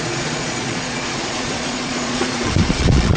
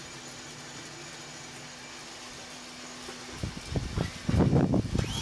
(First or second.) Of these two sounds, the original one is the second